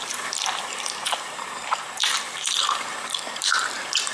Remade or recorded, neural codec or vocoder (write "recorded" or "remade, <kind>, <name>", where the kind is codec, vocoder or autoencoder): remade, vocoder, BigVGAN v2